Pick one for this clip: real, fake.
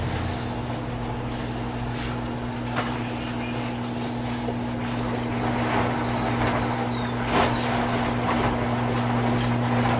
real